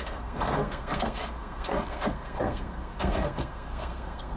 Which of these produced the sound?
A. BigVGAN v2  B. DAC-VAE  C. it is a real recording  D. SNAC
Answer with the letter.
D